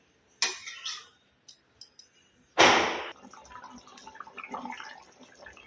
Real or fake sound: real